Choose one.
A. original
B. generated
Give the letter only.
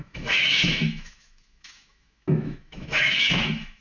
B